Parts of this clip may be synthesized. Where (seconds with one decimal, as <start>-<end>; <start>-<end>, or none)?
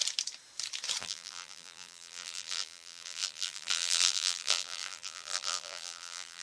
1.0-6.4